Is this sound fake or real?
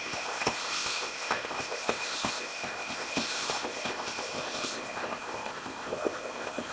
fake